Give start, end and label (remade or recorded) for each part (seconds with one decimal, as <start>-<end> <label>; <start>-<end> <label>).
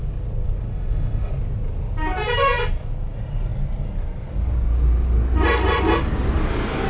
0.0-0.7 recorded; 0.7-1.3 remade; 1.3-6.9 recorded